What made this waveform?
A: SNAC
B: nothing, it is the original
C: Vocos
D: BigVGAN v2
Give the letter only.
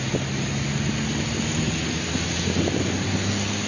B